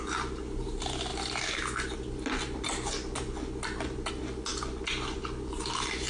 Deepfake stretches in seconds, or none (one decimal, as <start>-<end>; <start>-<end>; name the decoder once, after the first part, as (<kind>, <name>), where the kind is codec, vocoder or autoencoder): none